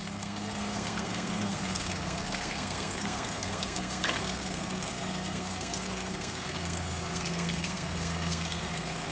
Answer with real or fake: fake